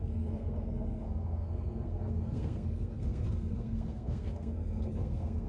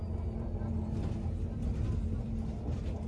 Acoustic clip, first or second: second